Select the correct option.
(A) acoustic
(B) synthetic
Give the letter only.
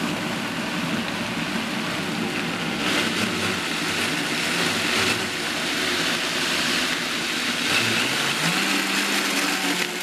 A